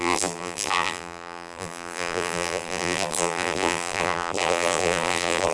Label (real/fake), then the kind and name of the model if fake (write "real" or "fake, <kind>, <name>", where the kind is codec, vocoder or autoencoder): fake, vocoder, BigVGAN v2